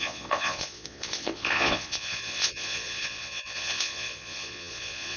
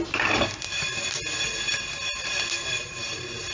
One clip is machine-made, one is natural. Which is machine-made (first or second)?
first